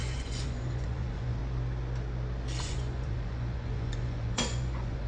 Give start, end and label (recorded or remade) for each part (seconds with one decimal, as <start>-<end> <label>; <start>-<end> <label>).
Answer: 0.0-1.4 remade; 1.4-2.6 recorded; 2.6-5.1 remade